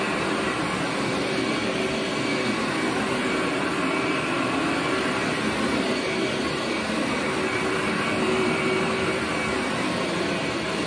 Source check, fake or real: fake